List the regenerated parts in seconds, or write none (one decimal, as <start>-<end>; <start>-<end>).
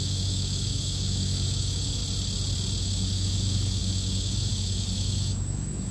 0.0-2.0; 2.8-5.9